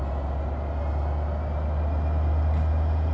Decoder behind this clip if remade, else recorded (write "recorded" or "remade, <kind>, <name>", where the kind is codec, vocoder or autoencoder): recorded